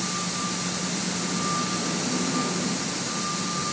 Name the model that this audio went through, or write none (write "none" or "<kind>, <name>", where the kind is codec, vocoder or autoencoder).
none